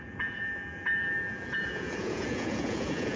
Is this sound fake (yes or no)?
yes